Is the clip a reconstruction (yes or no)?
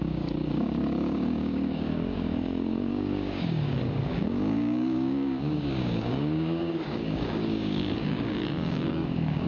yes